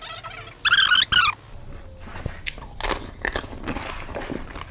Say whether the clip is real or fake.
real